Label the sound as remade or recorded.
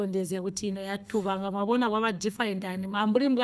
remade